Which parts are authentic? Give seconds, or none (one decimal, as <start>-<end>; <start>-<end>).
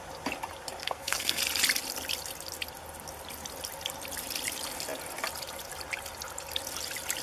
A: 0.0-0.8; 1.4-7.2